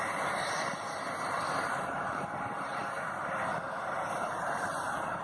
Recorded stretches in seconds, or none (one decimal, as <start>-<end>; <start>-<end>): 2.8-4.1

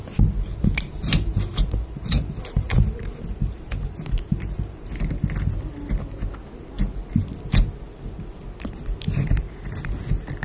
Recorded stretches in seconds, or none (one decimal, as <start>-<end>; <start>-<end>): 0.0-0.5; 5.1-10.4

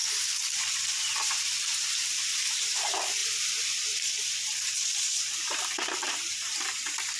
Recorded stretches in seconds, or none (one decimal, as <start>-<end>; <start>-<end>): 0.0-1.0

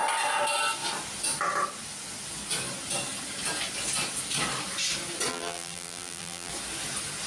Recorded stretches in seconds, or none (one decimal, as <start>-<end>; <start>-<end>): 0.0-5.3; 6.5-7.3

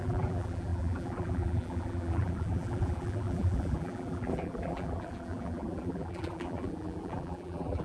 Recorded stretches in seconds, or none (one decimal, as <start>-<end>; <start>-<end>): none